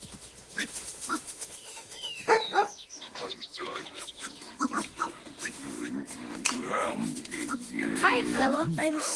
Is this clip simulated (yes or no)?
yes